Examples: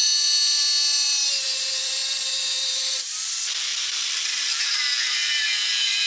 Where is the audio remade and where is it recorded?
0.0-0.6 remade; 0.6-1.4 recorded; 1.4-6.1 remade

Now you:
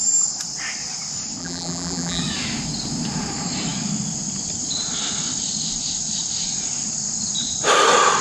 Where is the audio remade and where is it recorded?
0.0-1.4 recorded; 1.4-2.2 remade; 2.2-8.2 recorded